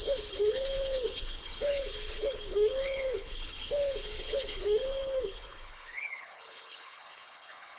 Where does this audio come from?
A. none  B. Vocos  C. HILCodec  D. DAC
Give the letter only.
C